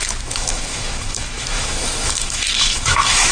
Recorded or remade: remade